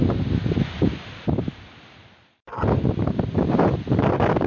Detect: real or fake real